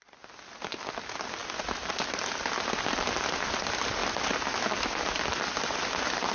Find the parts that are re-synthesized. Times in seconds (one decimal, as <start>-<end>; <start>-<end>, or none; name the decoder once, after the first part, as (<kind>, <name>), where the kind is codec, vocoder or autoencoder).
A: none